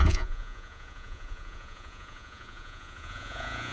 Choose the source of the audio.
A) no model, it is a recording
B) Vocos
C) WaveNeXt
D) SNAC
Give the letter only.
B